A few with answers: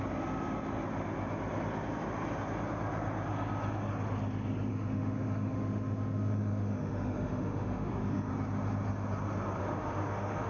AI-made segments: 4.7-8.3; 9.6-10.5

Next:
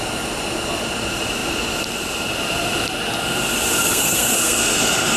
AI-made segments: 3.9-4.8

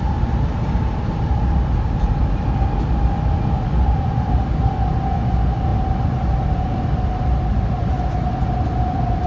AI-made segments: none